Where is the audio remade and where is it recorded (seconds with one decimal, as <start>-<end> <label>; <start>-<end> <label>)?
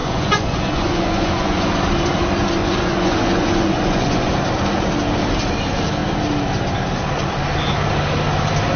0.0-1.7 remade; 1.7-2.6 recorded; 2.6-4.3 remade; 4.3-8.8 recorded